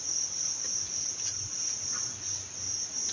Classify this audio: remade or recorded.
recorded